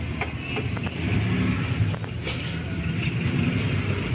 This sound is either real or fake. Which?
real